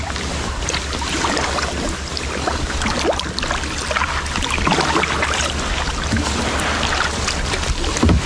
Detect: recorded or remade recorded